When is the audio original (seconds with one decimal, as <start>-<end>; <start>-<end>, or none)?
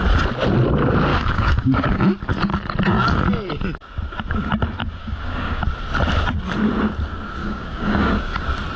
0.0-1.1; 2.0-4.8; 5.6-7.4; 8.4-8.8